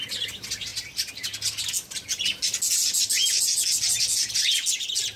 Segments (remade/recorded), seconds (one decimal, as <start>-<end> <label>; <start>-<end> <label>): 0.0-5.2 recorded